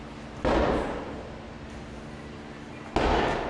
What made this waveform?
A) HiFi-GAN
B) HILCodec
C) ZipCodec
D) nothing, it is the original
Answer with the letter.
D